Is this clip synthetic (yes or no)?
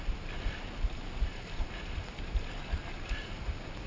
no